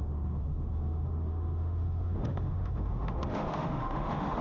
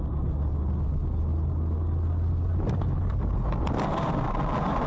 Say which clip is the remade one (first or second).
first